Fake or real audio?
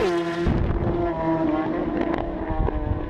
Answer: real